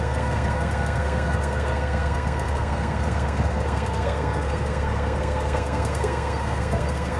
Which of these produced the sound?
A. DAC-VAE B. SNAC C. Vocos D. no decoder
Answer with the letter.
B